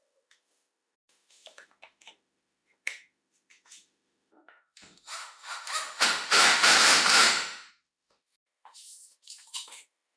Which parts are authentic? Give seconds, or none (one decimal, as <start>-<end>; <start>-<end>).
none